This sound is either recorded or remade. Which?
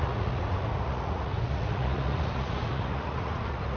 remade